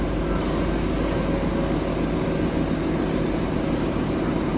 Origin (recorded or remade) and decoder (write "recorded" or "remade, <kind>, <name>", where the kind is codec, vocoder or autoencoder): recorded